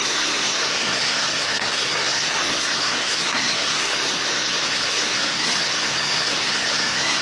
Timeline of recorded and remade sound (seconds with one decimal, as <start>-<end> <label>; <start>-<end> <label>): 0.0-7.2 remade